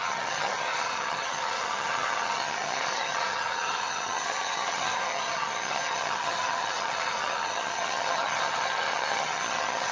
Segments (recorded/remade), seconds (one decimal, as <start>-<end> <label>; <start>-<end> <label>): 0.0-9.9 remade